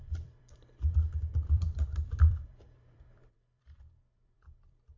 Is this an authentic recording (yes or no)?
no